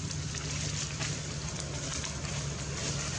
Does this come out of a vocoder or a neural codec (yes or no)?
no